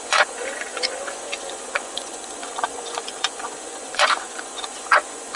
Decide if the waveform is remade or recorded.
remade